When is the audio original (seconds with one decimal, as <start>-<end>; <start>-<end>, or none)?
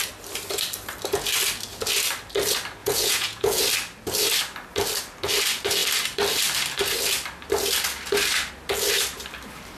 0.0-2.8; 3.6-9.8